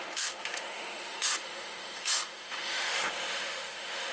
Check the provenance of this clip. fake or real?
fake